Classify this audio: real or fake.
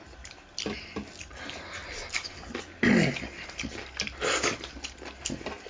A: real